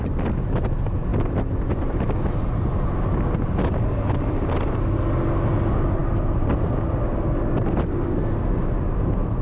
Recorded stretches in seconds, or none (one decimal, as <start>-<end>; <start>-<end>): 0.0-9.4